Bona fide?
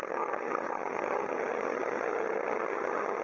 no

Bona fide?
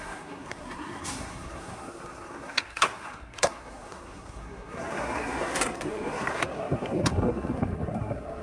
no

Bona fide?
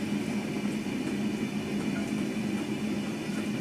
yes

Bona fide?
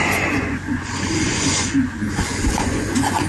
no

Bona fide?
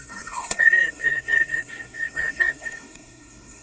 no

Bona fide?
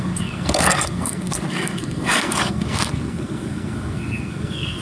no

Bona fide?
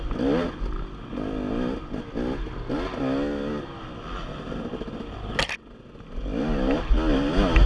yes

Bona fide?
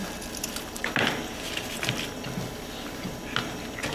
yes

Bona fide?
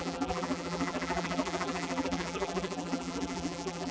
no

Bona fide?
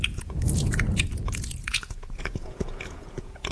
no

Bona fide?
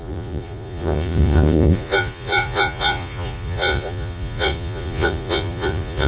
no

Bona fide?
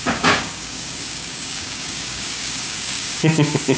no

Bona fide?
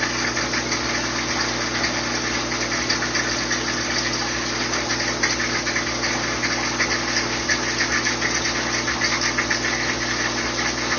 yes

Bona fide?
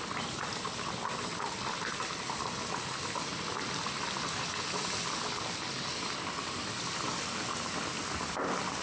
yes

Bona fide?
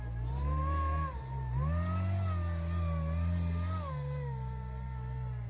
yes